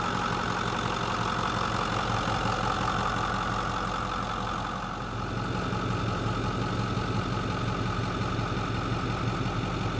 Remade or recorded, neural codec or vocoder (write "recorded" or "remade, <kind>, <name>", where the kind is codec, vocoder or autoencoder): recorded